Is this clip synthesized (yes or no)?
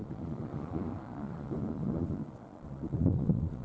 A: yes